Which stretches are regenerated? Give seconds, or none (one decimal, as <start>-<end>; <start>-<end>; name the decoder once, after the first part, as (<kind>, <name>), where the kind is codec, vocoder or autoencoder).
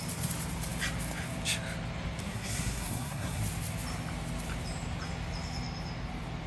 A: 2.2-3.4 (codec, SNAC)